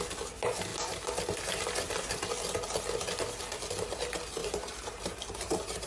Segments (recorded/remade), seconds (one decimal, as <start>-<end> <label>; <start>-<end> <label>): 0.0-4.4 recorded; 4.4-5.9 remade